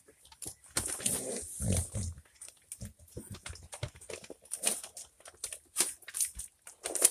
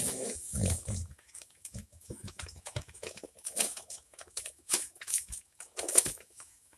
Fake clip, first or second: second